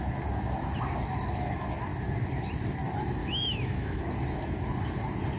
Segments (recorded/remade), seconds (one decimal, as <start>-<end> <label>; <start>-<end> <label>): 0.0-3.2 recorded; 3.2-4.0 remade; 4.0-5.4 recorded